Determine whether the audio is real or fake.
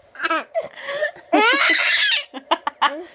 real